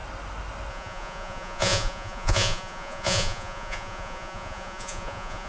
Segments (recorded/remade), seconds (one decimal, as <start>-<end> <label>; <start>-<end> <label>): 0.0-0.7 recorded; 0.7-5.5 remade

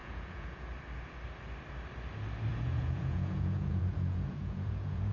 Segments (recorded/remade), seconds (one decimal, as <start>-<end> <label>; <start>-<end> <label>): 0.0-0.6 remade; 0.6-2.5 recorded; 2.5-5.1 remade

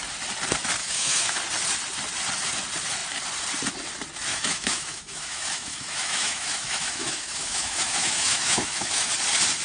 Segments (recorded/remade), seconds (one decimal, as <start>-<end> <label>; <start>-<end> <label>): 0.0-0.8 recorded; 0.8-1.4 remade; 1.4-4.3 recorded; 4.3-9.1 remade; 9.1-9.6 recorded